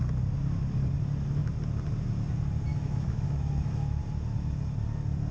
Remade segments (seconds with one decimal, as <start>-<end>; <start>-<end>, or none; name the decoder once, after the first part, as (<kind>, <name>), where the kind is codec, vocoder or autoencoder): 2.7-4.0 (autoencoder, DAC-VAE)